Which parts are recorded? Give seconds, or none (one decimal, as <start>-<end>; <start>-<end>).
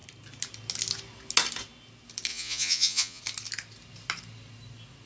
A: 0.0-2.3; 3.2-5.1